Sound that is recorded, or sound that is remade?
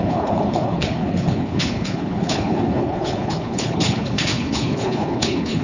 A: remade